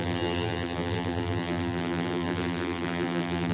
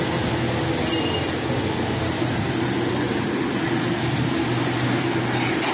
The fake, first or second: first